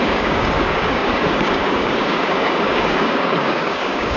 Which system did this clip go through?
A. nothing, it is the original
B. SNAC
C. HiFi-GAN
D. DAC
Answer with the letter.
D